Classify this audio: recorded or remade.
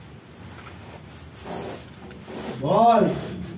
recorded